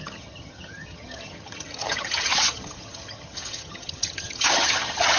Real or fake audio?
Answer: fake